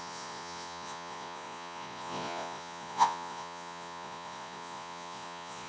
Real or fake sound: fake